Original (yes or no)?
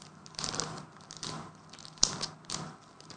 yes